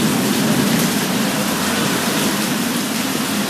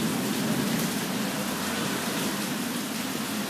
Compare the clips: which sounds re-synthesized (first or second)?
first